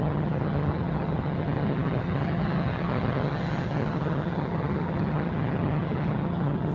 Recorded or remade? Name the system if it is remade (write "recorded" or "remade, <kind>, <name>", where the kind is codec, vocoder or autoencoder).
remade, vocoder, HiFi-GAN